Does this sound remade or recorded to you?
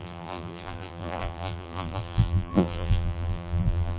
remade